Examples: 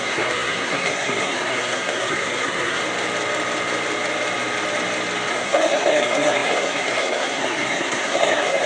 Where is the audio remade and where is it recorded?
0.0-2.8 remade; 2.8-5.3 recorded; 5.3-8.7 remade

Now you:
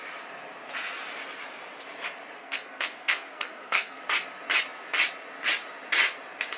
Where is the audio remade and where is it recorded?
0.0-2.4 recorded; 2.4-4.0 remade; 4.0-6.6 recorded

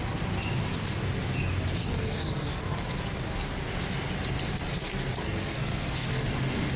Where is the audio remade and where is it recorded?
0.0-1.8 recorded; 1.8-2.6 remade; 2.6-4.7 recorded; 4.7-6.3 remade; 6.3-6.8 recorded

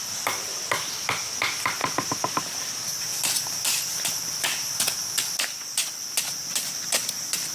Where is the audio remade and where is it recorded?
0.0-7.5 recorded

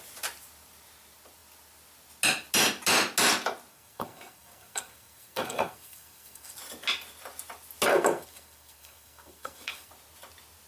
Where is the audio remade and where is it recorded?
0.0-3.7 recorded; 3.7-6.6 remade; 6.6-7.9 recorded; 7.9-9.9 remade; 9.9-10.7 recorded

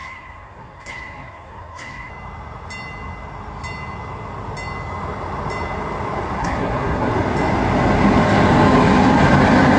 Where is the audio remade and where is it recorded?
0.0-2.1 remade; 2.1-6.4 recorded; 6.4-7.1 remade; 7.1-9.8 recorded